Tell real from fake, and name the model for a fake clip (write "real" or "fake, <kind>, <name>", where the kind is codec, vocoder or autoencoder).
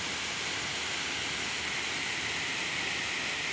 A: fake, vocoder, BigVGAN v2